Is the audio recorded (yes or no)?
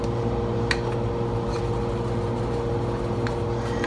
yes